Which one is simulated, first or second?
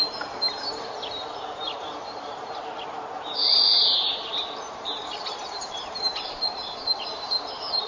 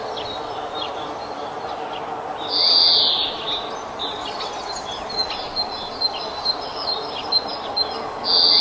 first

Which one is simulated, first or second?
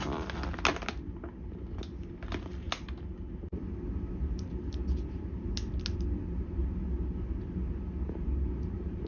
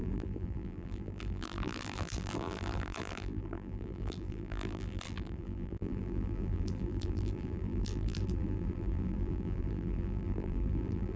second